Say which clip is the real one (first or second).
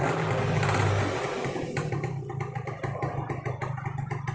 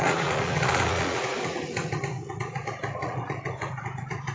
first